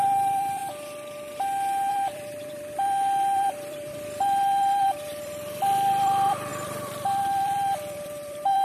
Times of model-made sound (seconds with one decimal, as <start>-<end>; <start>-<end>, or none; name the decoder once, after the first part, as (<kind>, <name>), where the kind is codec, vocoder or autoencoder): 0.0-0.6 (vocoder, BigVGAN v2); 1.9-8.6